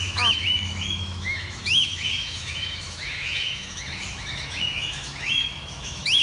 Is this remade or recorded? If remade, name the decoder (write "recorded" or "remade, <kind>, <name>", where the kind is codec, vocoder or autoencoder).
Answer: remade, autoencoder, DAC-VAE